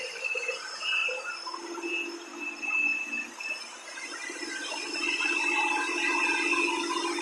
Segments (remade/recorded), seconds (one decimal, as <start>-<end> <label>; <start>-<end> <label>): 0.0-7.2 recorded